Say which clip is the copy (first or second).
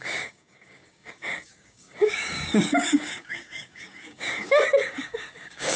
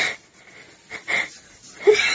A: first